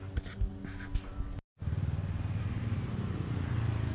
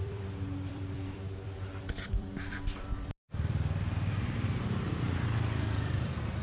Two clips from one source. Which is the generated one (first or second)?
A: second